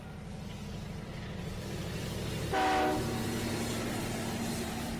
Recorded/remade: recorded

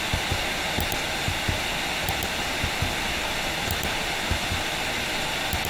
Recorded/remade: recorded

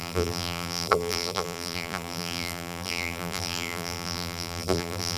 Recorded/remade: remade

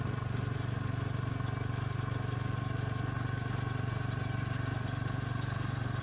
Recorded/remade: recorded